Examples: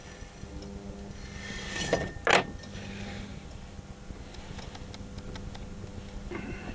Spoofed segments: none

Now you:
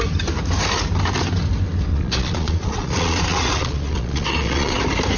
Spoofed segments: 1.9-4.8 (vocoder, Vocos)

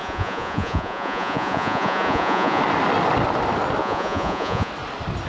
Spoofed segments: 0.0-2.6 (vocoder, Vocos); 3.8-4.7

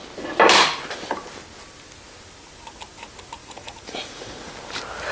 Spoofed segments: 3.4-4.5 (vocoder, Vocos)

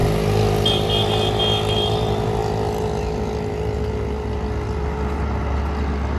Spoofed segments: none

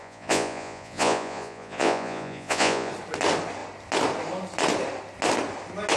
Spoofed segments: 0.0-2.9 (vocoder, Vocos)

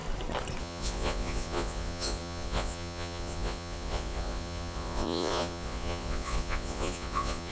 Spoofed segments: 0.6-7.5 (vocoder, Vocos)

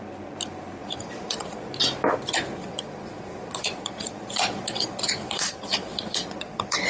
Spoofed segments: 0.8-1.7 (vocoder, Vocos); 2.6-6.9